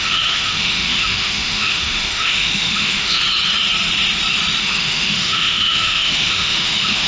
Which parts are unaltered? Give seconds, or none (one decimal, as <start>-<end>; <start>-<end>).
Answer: 3.2-4.6